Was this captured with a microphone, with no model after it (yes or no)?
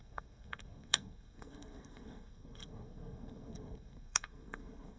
no